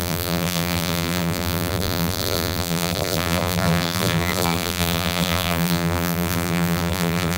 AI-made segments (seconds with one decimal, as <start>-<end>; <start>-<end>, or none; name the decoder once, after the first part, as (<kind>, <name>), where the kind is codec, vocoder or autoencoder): 0.0-7.4 (vocoder, BigVGAN v2)